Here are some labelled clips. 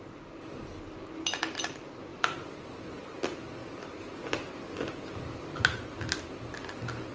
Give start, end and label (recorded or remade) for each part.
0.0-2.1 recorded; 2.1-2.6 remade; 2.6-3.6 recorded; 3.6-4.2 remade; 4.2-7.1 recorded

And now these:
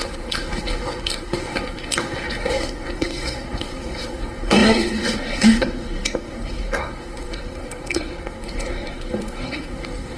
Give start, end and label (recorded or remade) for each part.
0.0-10.2 remade

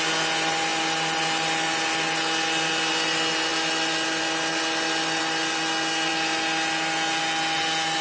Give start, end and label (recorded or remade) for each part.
0.0-8.0 recorded